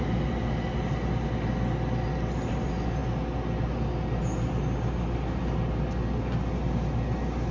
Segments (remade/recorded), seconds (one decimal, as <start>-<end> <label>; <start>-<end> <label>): 0.0-7.5 recorded